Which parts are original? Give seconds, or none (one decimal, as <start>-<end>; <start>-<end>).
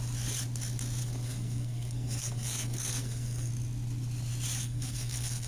0.0-1.0; 3.5-4.6